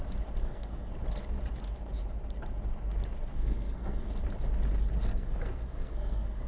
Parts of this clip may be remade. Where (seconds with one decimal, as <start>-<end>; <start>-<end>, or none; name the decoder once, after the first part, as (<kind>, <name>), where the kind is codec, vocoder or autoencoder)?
0.4-0.9 (codec, SNAC); 3.3-4.1; 5.1-6.5